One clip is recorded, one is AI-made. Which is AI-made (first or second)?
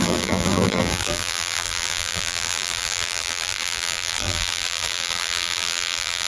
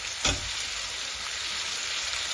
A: first